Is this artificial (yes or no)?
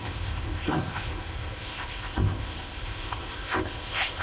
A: yes